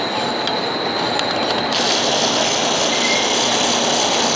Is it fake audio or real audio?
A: real